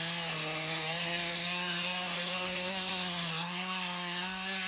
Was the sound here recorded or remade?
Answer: remade